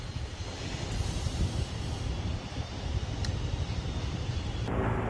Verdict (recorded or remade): remade